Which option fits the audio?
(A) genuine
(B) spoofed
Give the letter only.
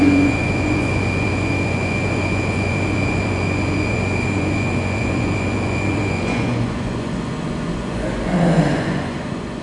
B